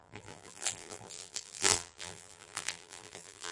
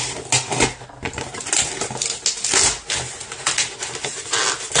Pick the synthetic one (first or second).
first